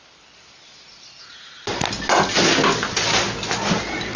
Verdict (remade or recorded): recorded